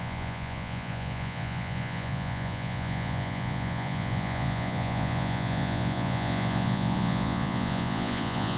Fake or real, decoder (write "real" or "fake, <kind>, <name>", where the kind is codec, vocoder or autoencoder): fake, vocoder, Vocos